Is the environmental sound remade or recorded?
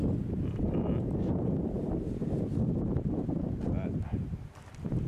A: recorded